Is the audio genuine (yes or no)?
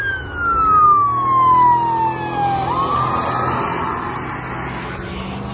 yes